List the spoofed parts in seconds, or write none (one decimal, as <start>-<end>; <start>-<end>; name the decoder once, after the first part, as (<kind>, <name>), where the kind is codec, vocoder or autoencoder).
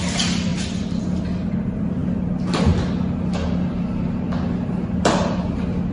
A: none